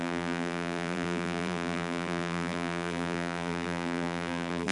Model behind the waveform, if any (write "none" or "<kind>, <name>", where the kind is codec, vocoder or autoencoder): vocoder, BigVGAN v2